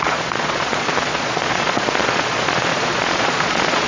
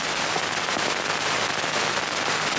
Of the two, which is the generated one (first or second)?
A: first